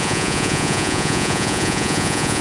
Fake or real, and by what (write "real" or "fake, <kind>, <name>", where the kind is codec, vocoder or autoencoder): fake, vocoder, Vocos